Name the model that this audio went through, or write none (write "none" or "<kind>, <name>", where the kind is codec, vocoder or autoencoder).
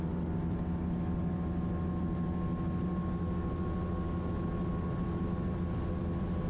none